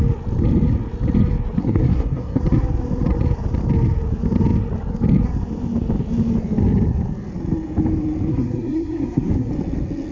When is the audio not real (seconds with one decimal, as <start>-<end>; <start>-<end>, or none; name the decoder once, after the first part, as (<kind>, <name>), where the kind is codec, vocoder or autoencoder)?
1.6-2.4 (codec, SNAC); 8.3-9.5